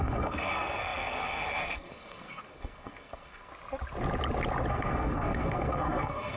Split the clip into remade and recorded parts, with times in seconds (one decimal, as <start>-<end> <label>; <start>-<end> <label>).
0.0-3.5 remade; 3.5-4.7 recorded; 4.7-6.4 remade